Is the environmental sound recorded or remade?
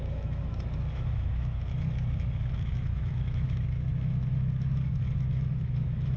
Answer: remade